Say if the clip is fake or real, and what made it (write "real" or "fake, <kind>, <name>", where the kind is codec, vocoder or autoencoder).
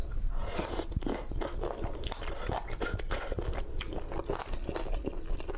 real